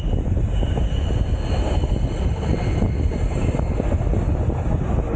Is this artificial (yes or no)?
no